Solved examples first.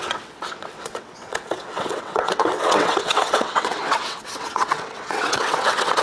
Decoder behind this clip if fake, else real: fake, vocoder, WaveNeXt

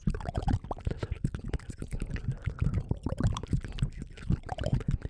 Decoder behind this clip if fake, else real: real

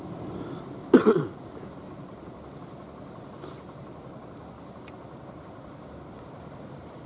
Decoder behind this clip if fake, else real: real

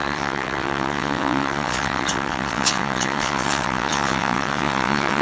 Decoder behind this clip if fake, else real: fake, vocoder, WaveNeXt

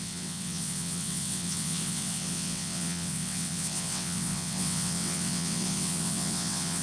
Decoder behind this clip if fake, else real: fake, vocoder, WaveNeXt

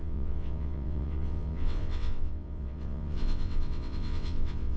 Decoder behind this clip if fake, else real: fake, vocoder, WaveNeXt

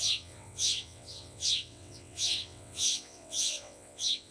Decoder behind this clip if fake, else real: fake, vocoder, WaveNeXt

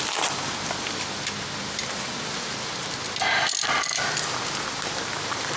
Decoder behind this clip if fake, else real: real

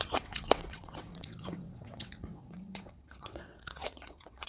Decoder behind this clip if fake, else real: fake, vocoder, WaveNeXt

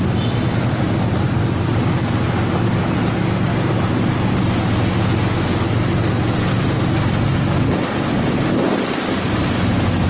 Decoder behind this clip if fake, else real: real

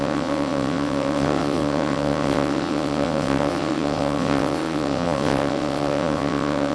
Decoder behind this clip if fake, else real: fake, vocoder, WaveNeXt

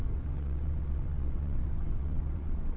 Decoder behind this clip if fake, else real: fake, vocoder, WaveNeXt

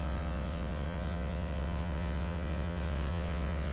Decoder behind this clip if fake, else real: fake, vocoder, WaveNeXt